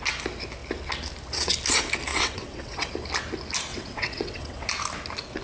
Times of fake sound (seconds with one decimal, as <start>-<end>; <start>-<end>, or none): 2.1-2.9; 3.7-4.7